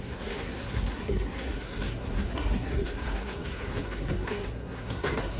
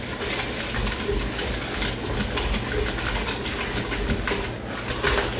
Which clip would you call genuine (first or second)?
second